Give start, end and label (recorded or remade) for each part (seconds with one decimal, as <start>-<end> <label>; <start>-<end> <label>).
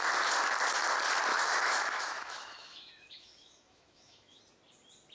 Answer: 0.0-1.3 recorded; 1.3-4.4 remade; 4.4-5.1 recorded